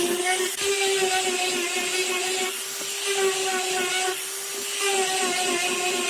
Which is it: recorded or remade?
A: recorded